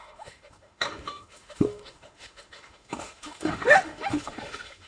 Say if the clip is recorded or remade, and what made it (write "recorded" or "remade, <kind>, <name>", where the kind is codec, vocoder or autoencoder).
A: remade, autoencoder, DAC-VAE